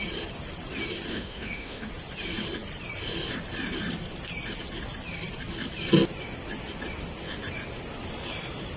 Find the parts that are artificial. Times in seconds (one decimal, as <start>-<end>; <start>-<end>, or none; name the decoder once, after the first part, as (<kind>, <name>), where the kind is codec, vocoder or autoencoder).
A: 1.1-1.9 (autoencoder, DAC-VAE)